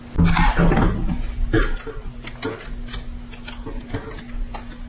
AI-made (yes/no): no